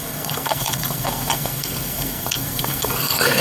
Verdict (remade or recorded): remade